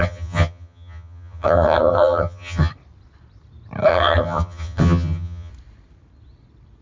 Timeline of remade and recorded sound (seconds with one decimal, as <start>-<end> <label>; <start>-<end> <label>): 0.0-2.7 remade; 2.7-3.9 recorded; 3.9-5.5 remade; 5.5-6.8 recorded